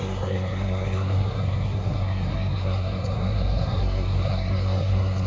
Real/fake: fake